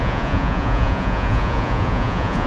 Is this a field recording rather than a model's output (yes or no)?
no